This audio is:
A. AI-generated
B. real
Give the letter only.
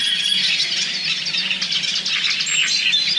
B